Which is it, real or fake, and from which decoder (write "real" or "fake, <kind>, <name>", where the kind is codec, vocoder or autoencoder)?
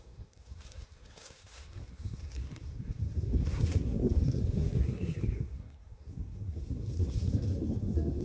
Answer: fake, codec, SNAC